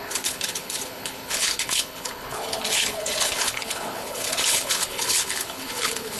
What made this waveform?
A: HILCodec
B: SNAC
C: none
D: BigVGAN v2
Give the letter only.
A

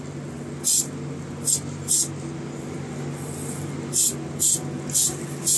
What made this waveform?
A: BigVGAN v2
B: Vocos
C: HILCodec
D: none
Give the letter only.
D